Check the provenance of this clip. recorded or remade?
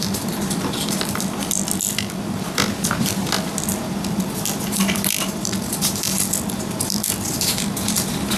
remade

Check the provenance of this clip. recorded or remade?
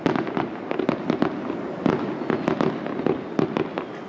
recorded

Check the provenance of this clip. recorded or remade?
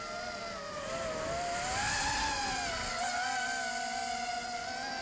recorded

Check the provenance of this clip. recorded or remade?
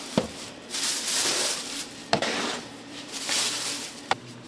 remade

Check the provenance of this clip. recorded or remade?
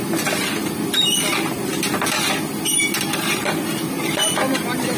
recorded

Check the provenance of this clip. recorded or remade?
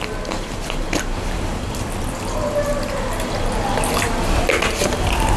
recorded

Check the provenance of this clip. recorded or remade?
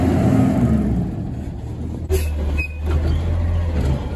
recorded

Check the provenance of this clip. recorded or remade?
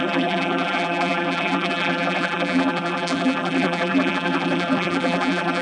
remade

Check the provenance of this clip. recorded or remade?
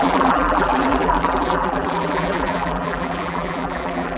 remade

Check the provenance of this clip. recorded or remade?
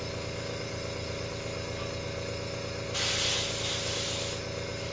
recorded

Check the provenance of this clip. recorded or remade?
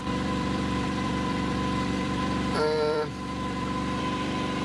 remade